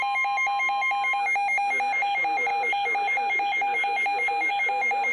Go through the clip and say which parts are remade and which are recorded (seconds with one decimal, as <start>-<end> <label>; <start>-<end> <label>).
0.0-5.1 recorded